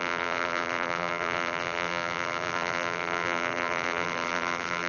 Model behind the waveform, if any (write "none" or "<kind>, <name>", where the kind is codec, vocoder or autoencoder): vocoder, BigVGAN v2